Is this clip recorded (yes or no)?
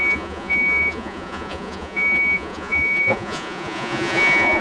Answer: no